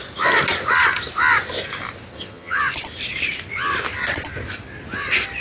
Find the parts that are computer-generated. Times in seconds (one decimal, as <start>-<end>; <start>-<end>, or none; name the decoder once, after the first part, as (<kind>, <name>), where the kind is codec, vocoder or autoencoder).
2.1-2.6 (vocoder, HiFi-GAN)